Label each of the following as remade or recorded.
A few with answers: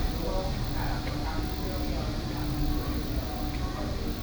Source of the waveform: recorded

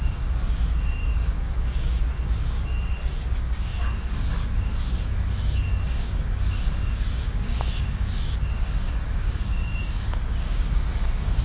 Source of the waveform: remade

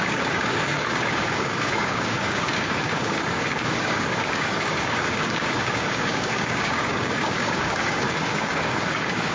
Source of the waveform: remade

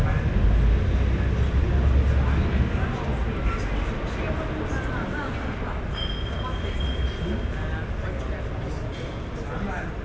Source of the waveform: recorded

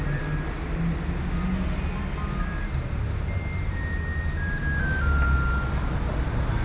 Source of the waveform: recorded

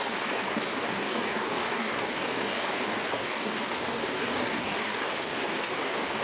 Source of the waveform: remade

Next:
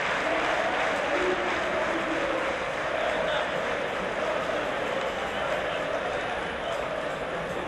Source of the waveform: recorded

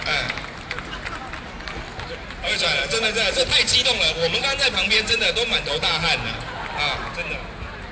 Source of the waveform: recorded